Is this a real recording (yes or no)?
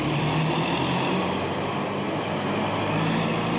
yes